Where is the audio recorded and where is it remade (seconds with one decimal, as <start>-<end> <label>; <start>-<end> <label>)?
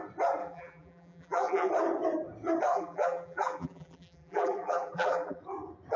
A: 0.0-0.4 recorded; 0.4-1.7 remade; 1.7-2.7 recorded; 2.7-5.4 remade; 5.4-6.0 recorded